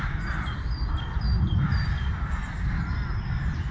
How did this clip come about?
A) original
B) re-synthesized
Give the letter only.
A